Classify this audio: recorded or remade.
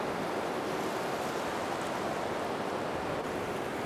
recorded